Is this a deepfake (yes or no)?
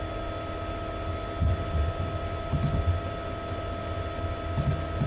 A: no